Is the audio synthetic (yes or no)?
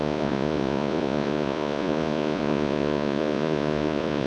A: yes